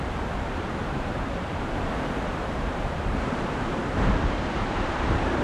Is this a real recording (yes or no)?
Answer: no